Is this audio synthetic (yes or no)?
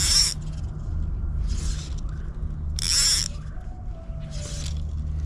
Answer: no